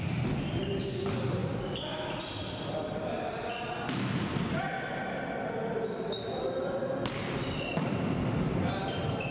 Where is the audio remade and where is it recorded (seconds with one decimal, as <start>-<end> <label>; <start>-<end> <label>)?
0.0-9.3 recorded